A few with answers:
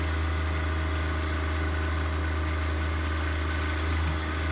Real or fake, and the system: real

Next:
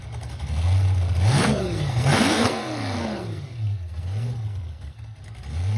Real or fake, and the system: fake, codec, SNAC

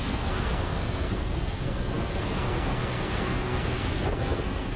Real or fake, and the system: fake, codec, SNAC